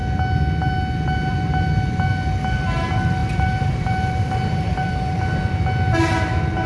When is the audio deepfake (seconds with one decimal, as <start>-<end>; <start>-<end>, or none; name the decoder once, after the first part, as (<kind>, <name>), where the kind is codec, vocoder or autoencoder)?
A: 3.2-5.2 (vocoder, BigVGAN v2)